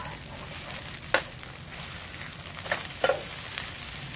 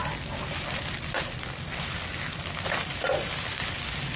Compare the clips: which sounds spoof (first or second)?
second